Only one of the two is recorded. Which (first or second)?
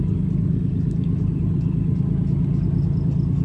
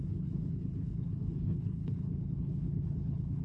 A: first